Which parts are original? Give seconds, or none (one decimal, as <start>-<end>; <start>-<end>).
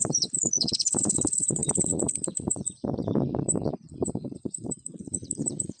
none